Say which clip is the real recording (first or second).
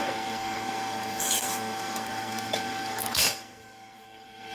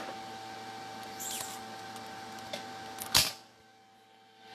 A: second